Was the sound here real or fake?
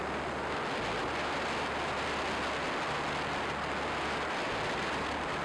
real